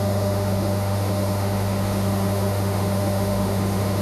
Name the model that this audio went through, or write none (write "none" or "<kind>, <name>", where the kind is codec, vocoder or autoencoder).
autoencoder, DAC-VAE